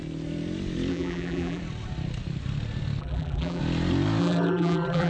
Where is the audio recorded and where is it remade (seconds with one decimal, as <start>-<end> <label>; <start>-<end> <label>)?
0.0-0.9 recorded; 0.9-1.6 remade; 1.6-3.0 recorded; 3.0-3.6 remade; 3.6-4.2 recorded; 4.2-5.1 remade